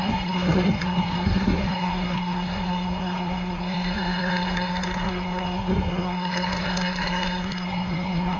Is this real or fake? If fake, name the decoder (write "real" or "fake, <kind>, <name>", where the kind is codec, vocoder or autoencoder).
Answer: fake, codec, SNAC